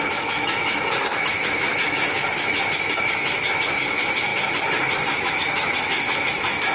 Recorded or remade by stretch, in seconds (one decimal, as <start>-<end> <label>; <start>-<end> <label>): 0.0-2.2 remade; 2.2-3.1 recorded; 3.1-6.7 remade